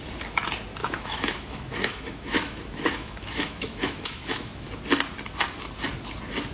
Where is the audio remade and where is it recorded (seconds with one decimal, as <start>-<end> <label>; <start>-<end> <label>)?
0.0-0.8 recorded; 0.8-4.7 remade; 4.7-6.5 recorded